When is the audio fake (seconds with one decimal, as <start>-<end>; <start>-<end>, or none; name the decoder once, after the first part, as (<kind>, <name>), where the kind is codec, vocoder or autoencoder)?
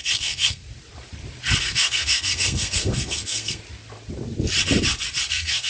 0.0-0.6 (codec, SNAC); 1.6-3.6; 5.3-5.7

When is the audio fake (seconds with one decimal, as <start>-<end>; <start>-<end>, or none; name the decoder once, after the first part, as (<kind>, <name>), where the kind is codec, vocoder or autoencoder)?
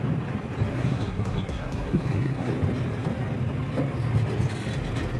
0.7-2.5 (codec, SNAC)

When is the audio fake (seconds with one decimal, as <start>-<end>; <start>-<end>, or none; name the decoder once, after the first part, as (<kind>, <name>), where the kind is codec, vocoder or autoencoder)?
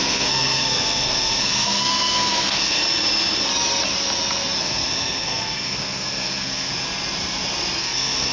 0.0-2.8 (codec, SNAC); 4.6-6.7; 7.8-8.3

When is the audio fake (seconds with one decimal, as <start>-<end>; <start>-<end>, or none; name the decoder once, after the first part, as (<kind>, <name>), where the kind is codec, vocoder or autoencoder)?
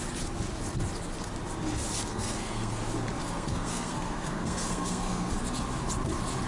2.1-2.8 (codec, SNAC); 3.2-5.3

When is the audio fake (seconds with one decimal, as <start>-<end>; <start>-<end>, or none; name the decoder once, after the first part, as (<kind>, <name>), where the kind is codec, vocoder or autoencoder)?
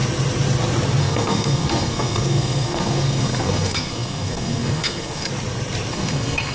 1.0-5.3 (codec, SNAC); 5.9-6.5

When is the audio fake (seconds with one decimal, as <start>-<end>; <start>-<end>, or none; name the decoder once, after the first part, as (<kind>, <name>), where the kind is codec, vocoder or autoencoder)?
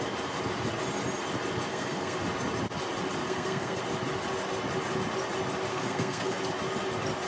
1.7-2.2 (codec, SNAC); 3.2-3.8; 5.7-6.4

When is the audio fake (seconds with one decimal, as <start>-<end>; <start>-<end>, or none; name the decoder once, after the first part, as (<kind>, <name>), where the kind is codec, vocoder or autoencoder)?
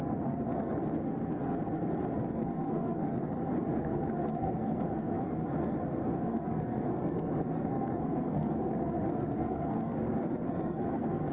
0.0-11.3 (codec, SNAC)